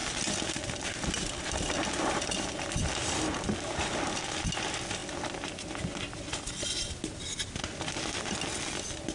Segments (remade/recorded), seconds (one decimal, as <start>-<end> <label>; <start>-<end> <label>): 0.0-9.1 recorded